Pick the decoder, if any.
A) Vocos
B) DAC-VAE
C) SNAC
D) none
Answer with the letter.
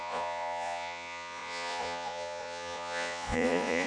A